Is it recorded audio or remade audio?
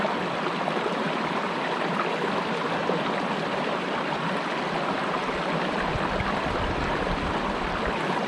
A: recorded